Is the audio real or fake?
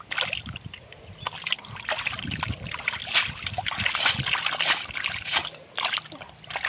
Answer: real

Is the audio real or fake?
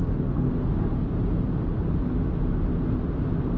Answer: real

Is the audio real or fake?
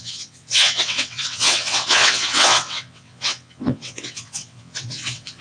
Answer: fake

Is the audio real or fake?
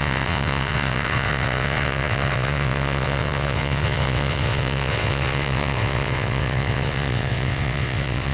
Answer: fake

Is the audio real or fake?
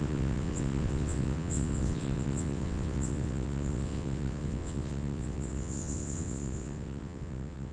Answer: fake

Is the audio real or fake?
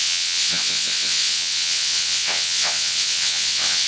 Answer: fake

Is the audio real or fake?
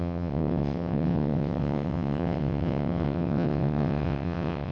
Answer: fake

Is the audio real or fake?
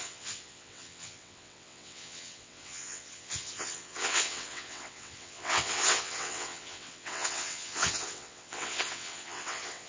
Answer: fake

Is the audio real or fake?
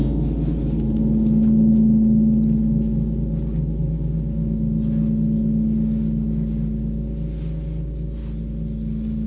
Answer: real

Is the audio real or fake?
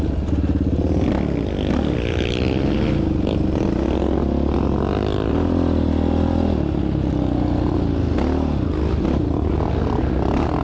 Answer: real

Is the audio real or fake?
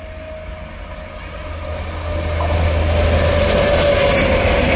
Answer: real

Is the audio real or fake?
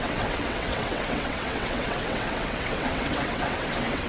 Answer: fake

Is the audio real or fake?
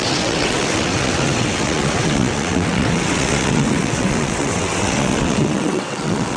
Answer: fake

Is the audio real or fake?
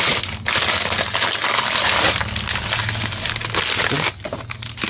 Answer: real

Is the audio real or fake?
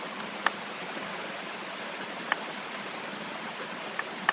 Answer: real